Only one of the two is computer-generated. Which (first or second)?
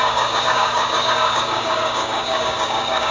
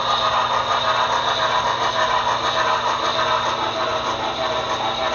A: first